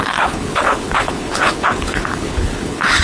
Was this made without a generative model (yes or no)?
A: no